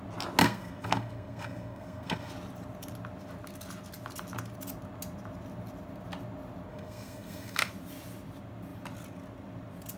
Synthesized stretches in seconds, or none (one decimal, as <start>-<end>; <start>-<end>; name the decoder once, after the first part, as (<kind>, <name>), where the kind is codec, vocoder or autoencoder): 0.4-2.3 (codec, SNAC); 6.7-7.7